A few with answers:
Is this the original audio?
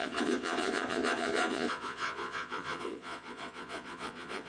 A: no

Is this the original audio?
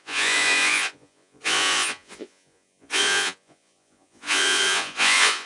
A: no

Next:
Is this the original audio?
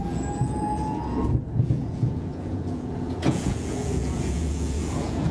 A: no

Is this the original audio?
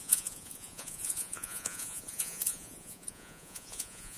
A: no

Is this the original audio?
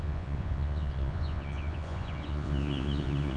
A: no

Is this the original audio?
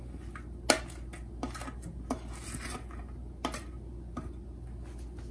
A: yes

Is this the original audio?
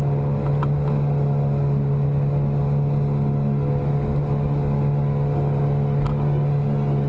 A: yes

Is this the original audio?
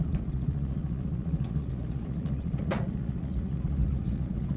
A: no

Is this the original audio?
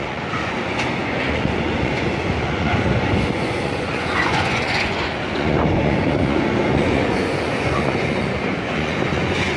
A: no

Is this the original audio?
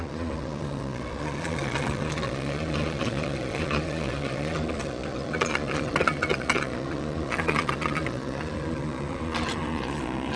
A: no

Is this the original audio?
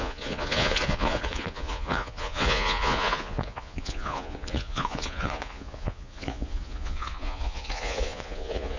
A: no